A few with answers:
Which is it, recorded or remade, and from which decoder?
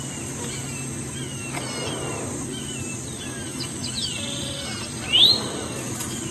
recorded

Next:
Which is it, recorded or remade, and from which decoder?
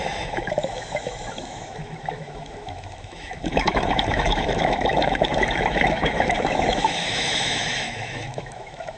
remade, autoencoder, DAC-VAE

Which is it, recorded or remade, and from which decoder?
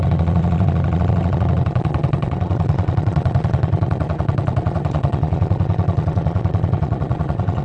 remade, vocoder, Vocos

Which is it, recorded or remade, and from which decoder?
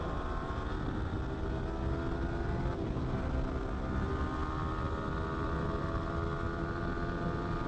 recorded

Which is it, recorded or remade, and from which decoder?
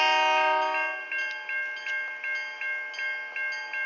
recorded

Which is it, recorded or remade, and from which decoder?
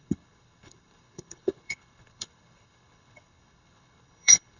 remade, codec, HILCodec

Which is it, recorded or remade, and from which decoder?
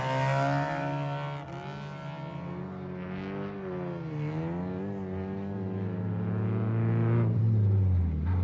recorded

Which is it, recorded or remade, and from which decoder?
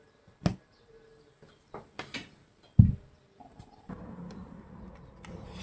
recorded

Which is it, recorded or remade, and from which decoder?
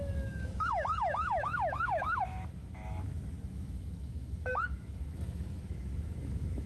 remade, autoencoder, DAC-VAE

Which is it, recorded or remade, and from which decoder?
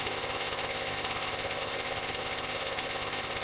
remade, codec, ZipCodec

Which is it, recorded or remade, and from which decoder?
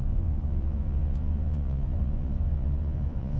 remade, vocoder, Vocos